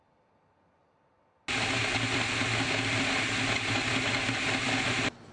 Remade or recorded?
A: recorded